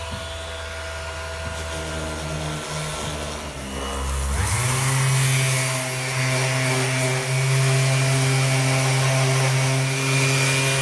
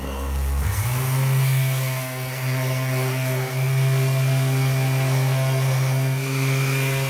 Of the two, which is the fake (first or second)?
second